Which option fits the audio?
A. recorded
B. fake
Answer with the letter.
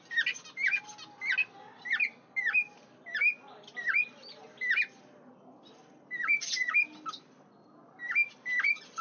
A